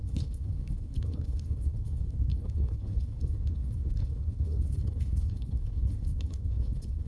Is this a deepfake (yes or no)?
yes